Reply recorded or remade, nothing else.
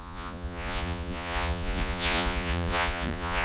remade